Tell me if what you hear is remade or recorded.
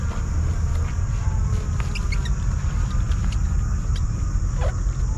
recorded